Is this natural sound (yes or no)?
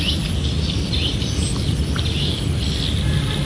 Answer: yes